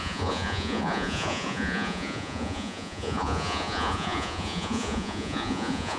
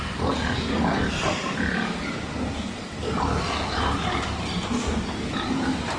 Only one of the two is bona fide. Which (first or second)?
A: second